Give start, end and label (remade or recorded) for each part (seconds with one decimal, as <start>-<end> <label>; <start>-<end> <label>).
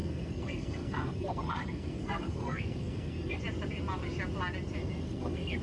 0.0-3.4 remade; 3.4-4.8 recorded; 4.8-5.6 remade